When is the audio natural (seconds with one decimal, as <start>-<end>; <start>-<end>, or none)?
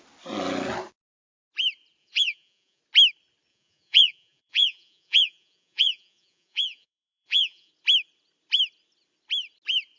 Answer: 0.0-2.0; 2.8-3.5; 7.7-10.0